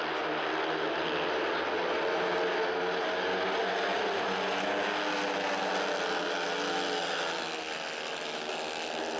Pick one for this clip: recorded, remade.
recorded